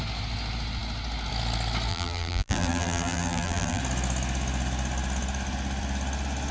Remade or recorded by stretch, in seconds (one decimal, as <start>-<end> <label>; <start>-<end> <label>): 0.0-1.9 recorded; 1.9-3.8 remade; 3.8-6.5 recorded